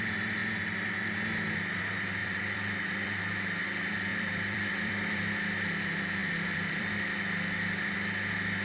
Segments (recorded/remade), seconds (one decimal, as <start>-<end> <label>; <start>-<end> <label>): 0.0-2.2 recorded; 2.2-3.2 remade; 3.2-4.1 recorded; 4.1-5.2 remade; 5.2-6.2 recorded; 6.2-6.9 remade; 6.9-8.6 recorded